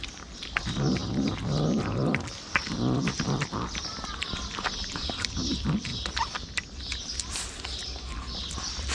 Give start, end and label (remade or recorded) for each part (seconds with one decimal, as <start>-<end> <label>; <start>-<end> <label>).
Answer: 0.0-5.9 remade; 5.9-8.5 recorded; 8.5-8.9 remade